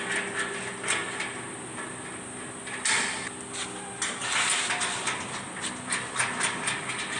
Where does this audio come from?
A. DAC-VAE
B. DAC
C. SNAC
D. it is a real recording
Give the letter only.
D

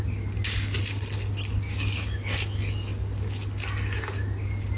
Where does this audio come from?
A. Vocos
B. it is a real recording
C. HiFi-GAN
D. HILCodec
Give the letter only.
B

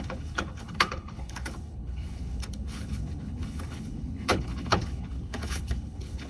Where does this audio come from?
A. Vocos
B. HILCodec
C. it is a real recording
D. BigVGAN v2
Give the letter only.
B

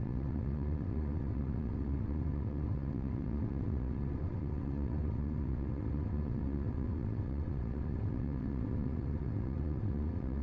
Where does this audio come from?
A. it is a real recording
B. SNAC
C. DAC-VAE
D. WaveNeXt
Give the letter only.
D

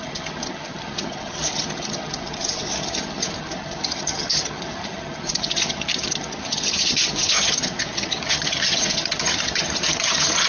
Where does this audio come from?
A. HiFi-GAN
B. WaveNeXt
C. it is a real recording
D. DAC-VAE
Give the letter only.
A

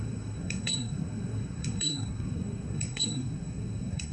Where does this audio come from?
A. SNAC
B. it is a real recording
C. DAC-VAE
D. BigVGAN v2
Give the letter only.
A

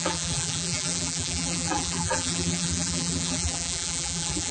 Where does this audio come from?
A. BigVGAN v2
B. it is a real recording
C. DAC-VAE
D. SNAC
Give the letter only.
A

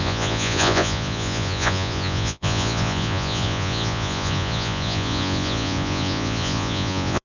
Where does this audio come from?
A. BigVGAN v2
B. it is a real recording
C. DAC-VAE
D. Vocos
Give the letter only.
D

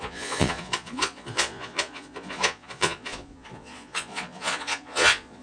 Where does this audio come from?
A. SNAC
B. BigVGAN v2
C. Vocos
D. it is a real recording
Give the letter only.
C